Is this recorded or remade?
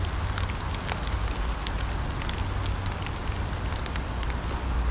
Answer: recorded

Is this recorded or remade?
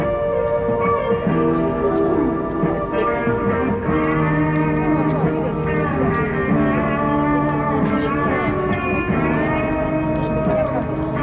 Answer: recorded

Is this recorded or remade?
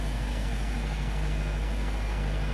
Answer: remade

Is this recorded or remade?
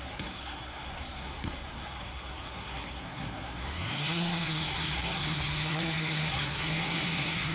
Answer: remade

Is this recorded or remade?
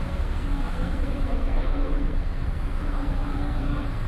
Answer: remade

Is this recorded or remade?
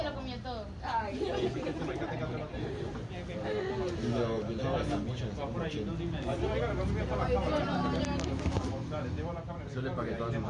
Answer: recorded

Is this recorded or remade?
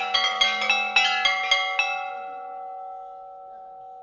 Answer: recorded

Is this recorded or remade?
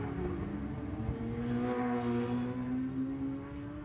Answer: recorded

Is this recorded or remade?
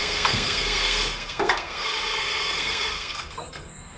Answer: remade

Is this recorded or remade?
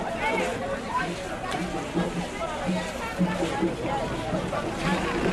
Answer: recorded